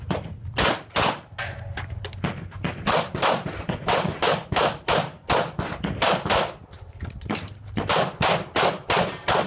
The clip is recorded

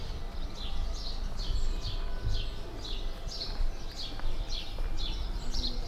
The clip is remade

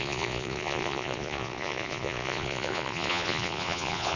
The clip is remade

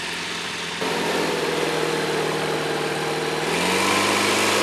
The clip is recorded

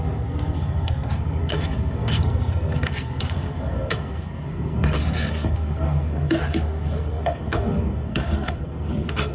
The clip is remade